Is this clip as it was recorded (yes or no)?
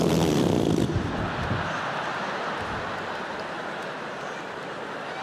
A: yes